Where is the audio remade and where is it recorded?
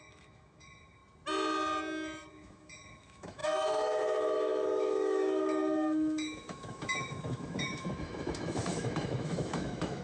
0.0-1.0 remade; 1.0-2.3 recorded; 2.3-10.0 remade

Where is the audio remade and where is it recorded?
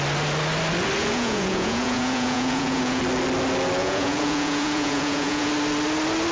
0.0-1.0 recorded; 1.0-3.0 remade; 3.0-3.8 recorded; 3.8-5.5 remade; 5.5-6.3 recorded